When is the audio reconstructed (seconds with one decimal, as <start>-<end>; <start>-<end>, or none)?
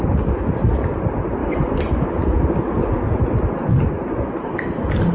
none